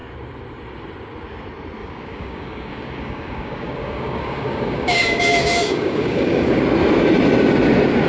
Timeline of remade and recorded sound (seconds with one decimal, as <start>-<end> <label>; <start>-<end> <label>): 0.0-1.8 recorded; 1.8-6.6 remade; 6.6-8.1 recorded